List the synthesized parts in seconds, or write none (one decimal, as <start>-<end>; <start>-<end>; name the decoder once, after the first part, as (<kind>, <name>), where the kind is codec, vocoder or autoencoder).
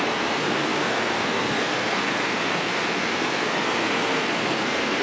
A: 0.0-5.0 (codec, SNAC)